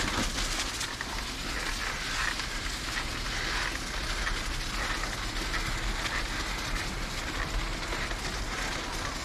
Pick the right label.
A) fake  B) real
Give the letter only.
B